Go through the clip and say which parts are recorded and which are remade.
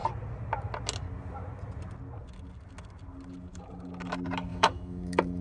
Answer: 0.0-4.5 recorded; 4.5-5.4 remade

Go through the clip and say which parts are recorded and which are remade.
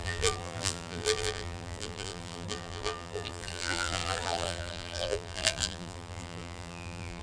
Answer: 0.0-7.2 remade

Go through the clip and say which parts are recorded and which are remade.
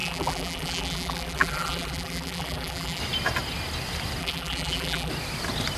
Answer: 0.0-3.0 remade; 3.0-4.2 recorded; 4.2-5.1 remade; 5.1-5.8 recorded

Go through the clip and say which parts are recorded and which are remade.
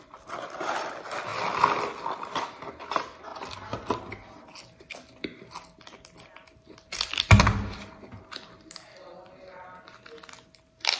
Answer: 0.0-11.0 recorded